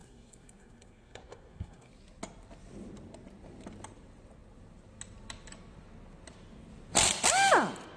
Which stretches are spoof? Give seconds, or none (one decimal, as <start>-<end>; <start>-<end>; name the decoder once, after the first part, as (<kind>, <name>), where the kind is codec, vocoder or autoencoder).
0.0-1.9 (codec, SNAC)